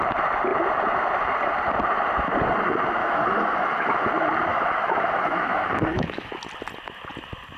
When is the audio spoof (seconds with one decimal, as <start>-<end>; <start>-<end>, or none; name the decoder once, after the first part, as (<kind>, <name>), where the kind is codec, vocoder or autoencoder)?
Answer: 3.0-4.1 (autoencoder, DAC-VAE); 4.5-6.3